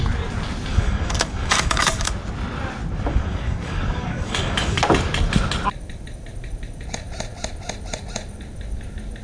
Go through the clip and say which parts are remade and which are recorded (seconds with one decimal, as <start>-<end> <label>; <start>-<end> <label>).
0.0-0.7 recorded; 0.7-2.1 remade; 2.1-3.1 recorded; 3.1-4.8 remade; 4.8-9.2 recorded